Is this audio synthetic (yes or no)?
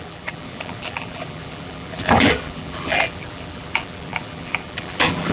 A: yes